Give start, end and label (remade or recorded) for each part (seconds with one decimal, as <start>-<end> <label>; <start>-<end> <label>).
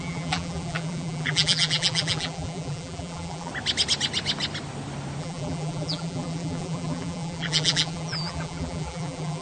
0.0-3.5 remade; 3.5-5.2 recorded; 5.2-9.4 remade